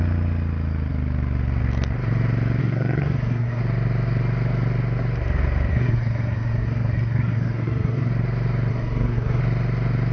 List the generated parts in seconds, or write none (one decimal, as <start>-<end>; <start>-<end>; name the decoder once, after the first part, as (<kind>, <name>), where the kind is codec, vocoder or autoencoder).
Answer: 2.6-3.6 (codec, SNAC); 5.7-8.1; 8.7-9.4